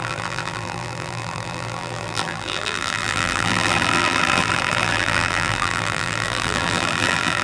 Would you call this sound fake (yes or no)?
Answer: yes